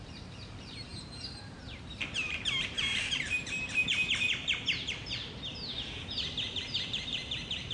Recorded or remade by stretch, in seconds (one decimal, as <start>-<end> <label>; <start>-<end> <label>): 0.0-5.5 remade; 5.5-6.5 recorded; 6.5-7.7 remade